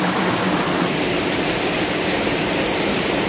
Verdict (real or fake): real